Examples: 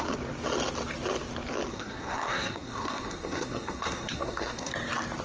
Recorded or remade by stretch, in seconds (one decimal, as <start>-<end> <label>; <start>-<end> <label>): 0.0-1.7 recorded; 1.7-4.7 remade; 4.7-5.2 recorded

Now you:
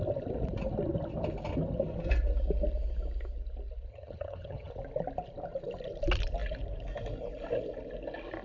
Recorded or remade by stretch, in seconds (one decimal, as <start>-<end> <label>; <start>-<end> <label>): 0.0-3.9 recorded; 3.9-4.7 remade; 4.7-8.4 recorded

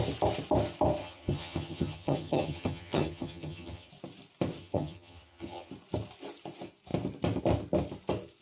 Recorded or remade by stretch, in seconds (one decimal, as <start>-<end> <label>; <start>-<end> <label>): 0.0-1.0 recorded; 1.0-3.9 remade; 3.9-4.6 recorded; 4.6-5.7 remade; 5.7-8.4 recorded

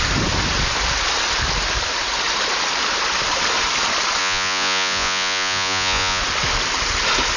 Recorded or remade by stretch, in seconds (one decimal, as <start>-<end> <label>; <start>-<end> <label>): 0.0-4.2 recorded; 4.2-6.2 remade; 6.2-7.4 recorded

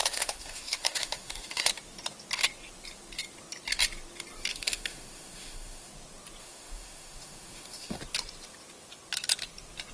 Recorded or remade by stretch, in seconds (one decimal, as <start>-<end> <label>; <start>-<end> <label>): 0.0-1.7 remade; 1.7-4.5 recorded; 4.5-5.9 remade; 5.9-6.4 recorded; 6.4-8.0 remade; 8.0-9.9 recorded

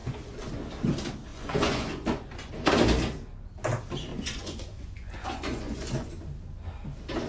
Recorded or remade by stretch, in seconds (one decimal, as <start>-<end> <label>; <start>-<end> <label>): 0.0-0.5 remade; 0.5-1.3 recorded; 1.3-2.5 remade; 2.5-4.1 recorded; 4.1-6.1 remade; 6.1-7.3 recorded

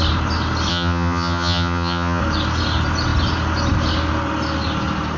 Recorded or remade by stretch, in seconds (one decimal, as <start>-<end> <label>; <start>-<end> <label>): 0.0-0.7 recorded; 0.7-2.2 remade; 2.2-5.2 recorded